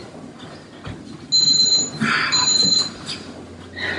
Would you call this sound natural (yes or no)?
yes